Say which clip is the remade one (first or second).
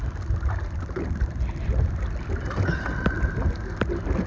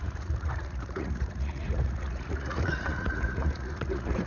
second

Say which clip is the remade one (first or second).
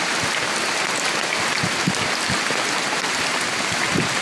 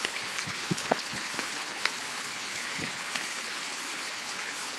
second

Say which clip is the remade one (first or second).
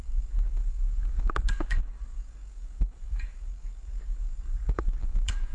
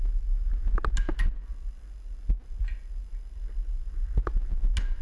first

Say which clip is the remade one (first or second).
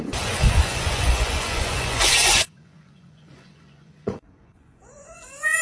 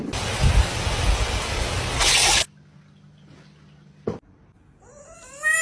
first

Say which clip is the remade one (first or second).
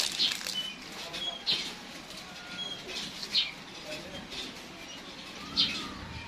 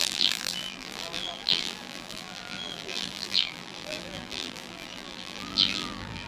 second